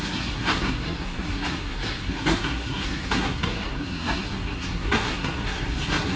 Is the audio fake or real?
fake